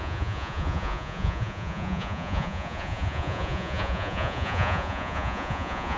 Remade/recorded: remade